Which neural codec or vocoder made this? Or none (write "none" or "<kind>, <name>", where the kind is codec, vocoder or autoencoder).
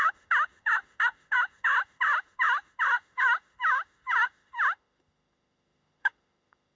autoencoder, DAC-VAE